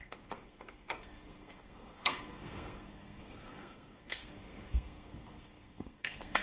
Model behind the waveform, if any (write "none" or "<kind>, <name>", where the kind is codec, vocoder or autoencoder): codec, SNAC